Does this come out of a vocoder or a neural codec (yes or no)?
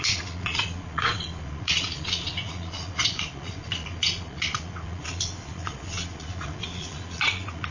yes